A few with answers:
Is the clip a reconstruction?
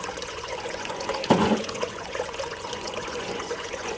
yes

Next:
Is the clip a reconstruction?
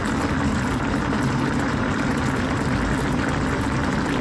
no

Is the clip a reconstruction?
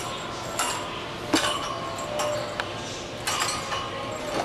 no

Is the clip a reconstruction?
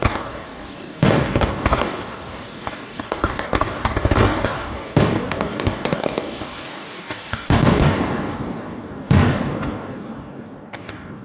yes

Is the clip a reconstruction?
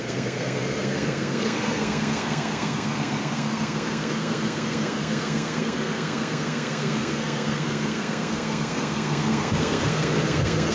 yes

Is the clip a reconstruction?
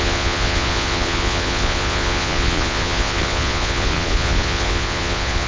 yes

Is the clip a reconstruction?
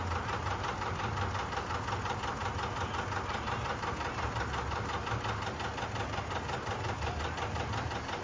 no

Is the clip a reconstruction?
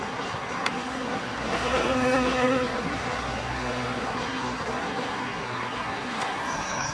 yes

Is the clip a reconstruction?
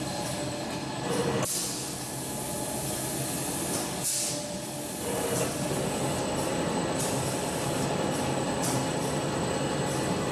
no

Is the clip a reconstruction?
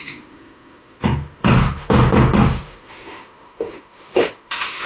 yes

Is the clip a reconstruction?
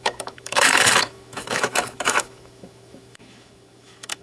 yes